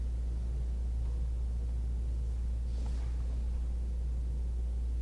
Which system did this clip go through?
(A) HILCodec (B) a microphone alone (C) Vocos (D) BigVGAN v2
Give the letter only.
B